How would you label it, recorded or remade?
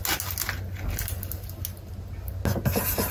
recorded